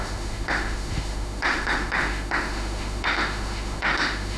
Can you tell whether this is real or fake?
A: fake